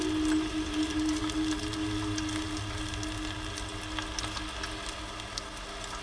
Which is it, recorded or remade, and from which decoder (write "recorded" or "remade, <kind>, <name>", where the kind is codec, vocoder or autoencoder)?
recorded